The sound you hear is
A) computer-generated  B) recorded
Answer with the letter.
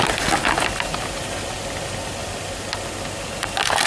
B